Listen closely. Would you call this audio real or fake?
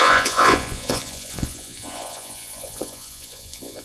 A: fake